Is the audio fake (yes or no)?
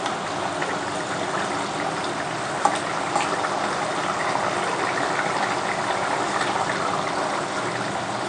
no